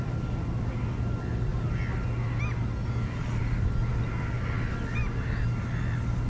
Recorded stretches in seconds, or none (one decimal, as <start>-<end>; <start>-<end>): 0.0-6.3